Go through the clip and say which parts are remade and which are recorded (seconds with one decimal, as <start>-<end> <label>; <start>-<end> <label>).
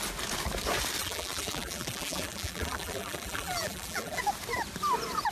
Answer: 0.0-1.0 recorded; 1.0-4.2 remade; 4.2-5.3 recorded